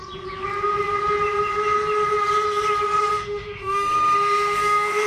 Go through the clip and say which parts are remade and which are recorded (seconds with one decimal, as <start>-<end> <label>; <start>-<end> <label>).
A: 0.0-3.1 recorded; 3.1-5.1 remade

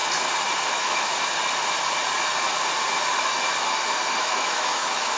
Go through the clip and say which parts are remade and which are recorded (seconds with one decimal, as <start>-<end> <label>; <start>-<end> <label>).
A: 0.0-0.7 recorded; 0.7-1.1 remade; 1.1-4.2 recorded; 4.2-5.2 remade

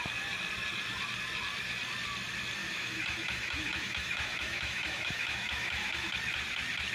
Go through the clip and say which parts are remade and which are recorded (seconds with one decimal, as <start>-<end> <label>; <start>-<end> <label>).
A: 0.0-2.6 recorded; 2.6-6.1 remade; 6.1-6.9 recorded

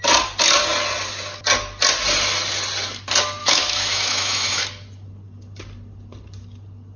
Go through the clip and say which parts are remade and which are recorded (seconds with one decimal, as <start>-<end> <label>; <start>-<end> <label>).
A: 0.0-3.4 recorded; 3.4-4.6 remade; 4.6-7.0 recorded

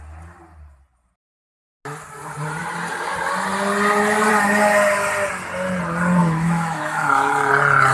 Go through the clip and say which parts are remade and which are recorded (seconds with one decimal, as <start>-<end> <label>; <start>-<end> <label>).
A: 0.0-6.2 recorded; 6.2-7.5 remade; 7.5-7.9 recorded